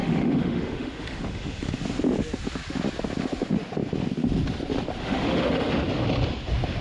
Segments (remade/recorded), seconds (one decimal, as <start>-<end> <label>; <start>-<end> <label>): 0.0-1.8 remade; 1.8-5.0 recorded; 5.0-5.7 remade; 5.7-6.8 recorded